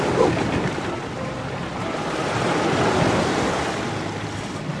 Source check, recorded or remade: recorded